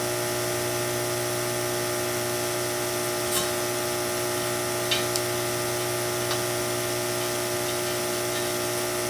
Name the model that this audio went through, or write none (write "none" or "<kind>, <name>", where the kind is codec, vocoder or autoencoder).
none